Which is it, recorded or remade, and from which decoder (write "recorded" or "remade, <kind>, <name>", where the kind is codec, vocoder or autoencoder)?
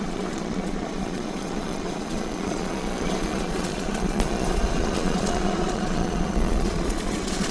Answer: remade, vocoder, Vocos